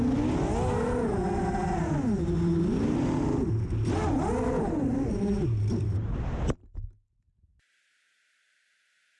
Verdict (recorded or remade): recorded